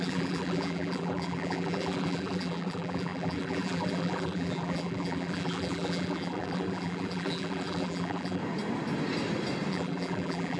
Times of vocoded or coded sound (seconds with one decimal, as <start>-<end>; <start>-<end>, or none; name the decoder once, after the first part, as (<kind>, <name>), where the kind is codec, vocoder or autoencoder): 0.0-8.4 (vocoder, BigVGAN v2); 9.7-10.6